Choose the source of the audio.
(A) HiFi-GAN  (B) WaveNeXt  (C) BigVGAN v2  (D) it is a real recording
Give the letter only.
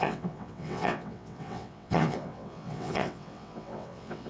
B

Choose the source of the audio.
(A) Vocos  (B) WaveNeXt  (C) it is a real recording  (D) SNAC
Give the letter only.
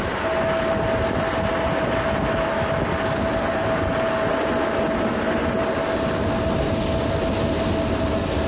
C